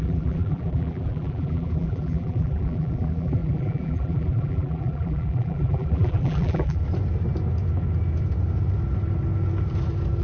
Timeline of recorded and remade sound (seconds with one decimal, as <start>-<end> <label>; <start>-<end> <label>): 0.0-6.8 remade; 6.8-10.2 recorded